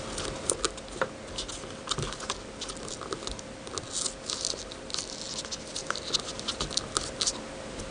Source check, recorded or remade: recorded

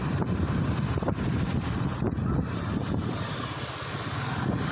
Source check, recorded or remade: remade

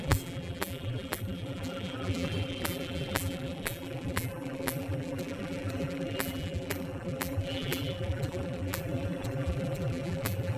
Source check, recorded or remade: remade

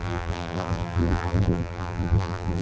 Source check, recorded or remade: remade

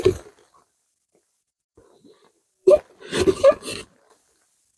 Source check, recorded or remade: remade